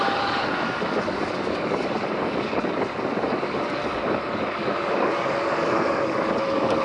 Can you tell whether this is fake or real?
fake